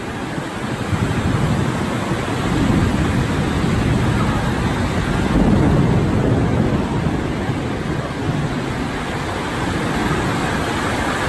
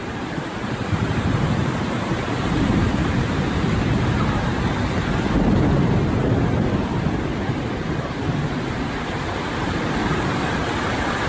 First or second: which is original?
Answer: first